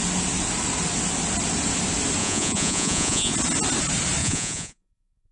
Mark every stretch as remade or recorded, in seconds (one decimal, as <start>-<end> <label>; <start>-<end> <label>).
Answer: 0.0-2.2 recorded; 2.2-3.3 remade; 3.3-4.2 recorded; 4.2-5.3 remade